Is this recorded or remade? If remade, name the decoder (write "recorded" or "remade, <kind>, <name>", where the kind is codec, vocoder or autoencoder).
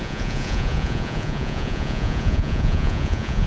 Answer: remade, vocoder, Vocos